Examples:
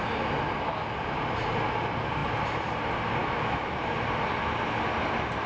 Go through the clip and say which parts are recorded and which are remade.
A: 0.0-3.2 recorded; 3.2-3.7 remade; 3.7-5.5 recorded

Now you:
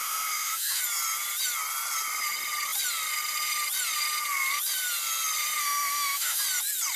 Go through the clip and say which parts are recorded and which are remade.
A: 0.0-0.8 remade; 0.8-5.6 recorded; 5.6-6.4 remade; 6.4-7.0 recorded

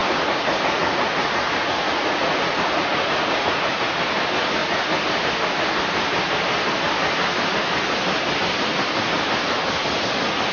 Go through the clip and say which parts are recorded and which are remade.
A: 0.0-4.0 remade; 4.0-9.8 recorded; 9.8-10.5 remade

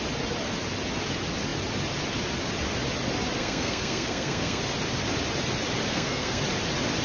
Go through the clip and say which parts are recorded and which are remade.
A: 0.0-3.4 recorded; 3.4-4.6 remade; 4.6-5.9 recorded; 5.9-6.4 remade; 6.4-7.0 recorded